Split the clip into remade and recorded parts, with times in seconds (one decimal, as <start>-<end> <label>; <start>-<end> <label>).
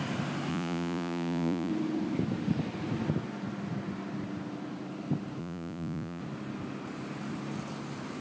0.0-0.5 recorded; 0.5-1.7 remade; 1.7-5.4 recorded; 5.4-6.2 remade; 6.2-8.2 recorded